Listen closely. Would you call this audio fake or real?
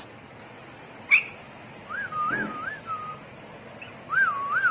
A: real